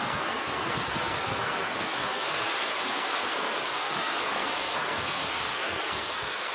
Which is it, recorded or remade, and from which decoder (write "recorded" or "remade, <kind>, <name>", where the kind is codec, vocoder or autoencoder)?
remade, codec, SNAC